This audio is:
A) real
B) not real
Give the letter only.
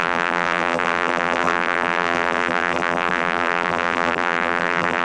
B